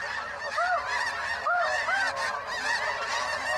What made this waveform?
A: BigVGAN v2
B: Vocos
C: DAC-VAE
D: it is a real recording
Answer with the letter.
D